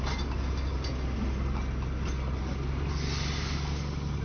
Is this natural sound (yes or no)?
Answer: yes